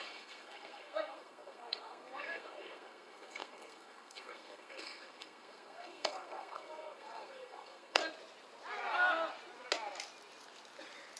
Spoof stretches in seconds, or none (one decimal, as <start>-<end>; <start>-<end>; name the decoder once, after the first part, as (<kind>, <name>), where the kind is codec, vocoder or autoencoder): 0.0-8.0 (codec, SNAC)